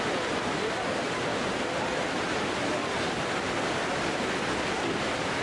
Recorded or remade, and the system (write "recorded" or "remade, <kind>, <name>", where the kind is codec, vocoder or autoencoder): recorded